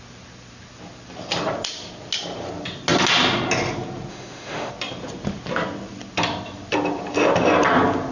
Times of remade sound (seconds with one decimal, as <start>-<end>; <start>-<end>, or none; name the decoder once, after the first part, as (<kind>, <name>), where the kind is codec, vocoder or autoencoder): 4.1-4.7 (autoencoder, DAC-VAE)